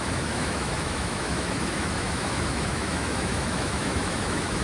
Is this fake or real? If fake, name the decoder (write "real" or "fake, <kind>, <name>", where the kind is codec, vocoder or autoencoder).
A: fake, autoencoder, DAC-VAE